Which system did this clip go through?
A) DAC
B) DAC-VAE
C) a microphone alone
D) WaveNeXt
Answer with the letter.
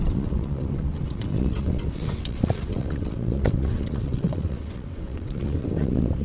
D